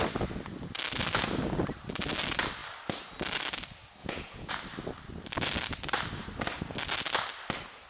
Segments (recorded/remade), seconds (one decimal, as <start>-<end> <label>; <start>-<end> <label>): 0.0-4.0 recorded; 4.0-4.5 remade; 4.5-7.9 recorded